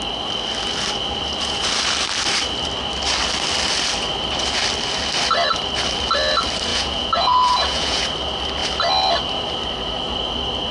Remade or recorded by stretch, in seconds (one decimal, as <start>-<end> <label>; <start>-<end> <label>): 0.0-6.7 recorded; 6.7-8.0 remade; 8.0-10.7 recorded